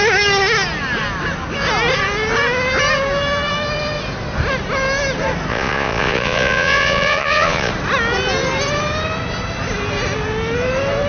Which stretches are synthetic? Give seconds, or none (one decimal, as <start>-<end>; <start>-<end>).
5.5-7.7